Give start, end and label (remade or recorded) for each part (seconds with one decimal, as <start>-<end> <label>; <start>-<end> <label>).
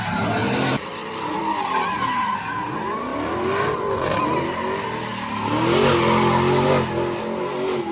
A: 0.0-0.4 recorded; 0.4-1.4 remade; 1.4-3.1 recorded; 3.1-4.2 remade; 4.2-7.9 recorded